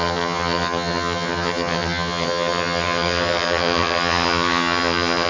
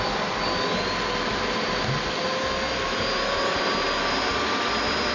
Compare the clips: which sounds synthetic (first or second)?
first